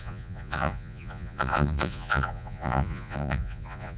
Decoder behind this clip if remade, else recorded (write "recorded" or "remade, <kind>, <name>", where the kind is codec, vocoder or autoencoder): remade, vocoder, Vocos